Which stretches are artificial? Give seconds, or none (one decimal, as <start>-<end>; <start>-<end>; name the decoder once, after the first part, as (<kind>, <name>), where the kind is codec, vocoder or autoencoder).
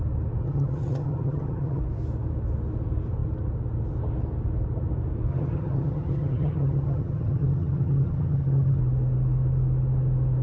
0.4-1.8 (vocoder, HiFi-GAN); 5.3-8.8